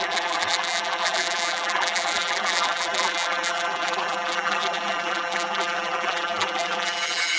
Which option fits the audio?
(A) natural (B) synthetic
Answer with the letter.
B